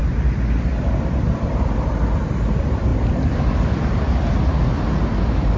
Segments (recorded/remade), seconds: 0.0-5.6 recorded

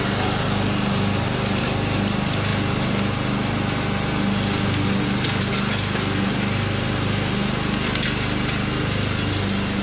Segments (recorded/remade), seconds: 0.0-9.8 recorded

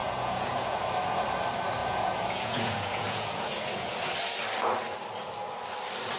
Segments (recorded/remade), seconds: 0.0-0.8 remade; 0.8-1.8 recorded; 1.8-4.1 remade; 4.1-6.2 recorded

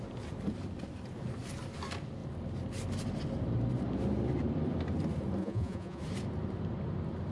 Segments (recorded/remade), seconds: 0.0-5.4 recorded; 5.4-6.0 remade; 6.0-7.3 recorded

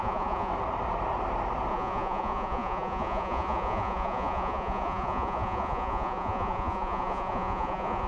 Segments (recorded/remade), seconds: 0.0-0.5 remade; 0.5-1.7 recorded; 1.7-8.1 remade

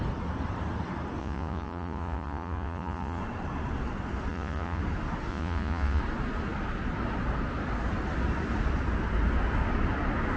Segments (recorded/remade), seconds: 0.0-1.2 recorded; 1.2-3.2 remade; 3.2-4.3 recorded; 4.3-4.8 remade; 4.8-5.3 recorded; 5.3-6.0 remade; 6.0-10.4 recorded

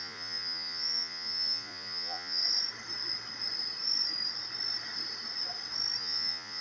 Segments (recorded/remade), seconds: 0.0-2.4 remade; 2.4-6.0 recorded; 6.0-6.6 remade